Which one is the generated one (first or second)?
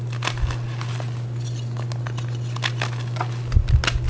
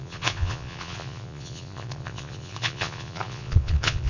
second